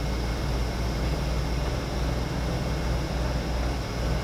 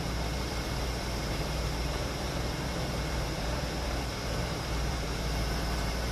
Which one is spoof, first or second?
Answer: second